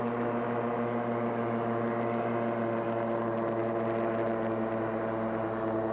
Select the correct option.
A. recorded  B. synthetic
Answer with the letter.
A